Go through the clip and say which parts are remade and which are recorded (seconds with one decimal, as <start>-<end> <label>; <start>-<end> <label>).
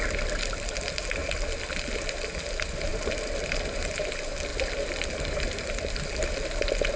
0.0-2.9 recorded; 2.9-4.1 remade; 4.1-4.5 recorded; 4.5-6.1 remade; 6.1-7.0 recorded